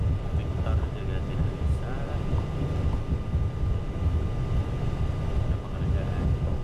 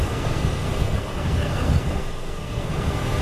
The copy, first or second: second